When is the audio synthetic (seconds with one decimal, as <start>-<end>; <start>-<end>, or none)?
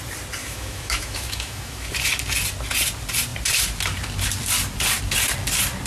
0.4-1.9